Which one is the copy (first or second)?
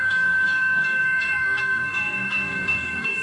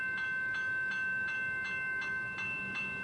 first